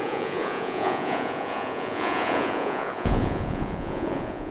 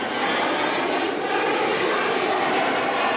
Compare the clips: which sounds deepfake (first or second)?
first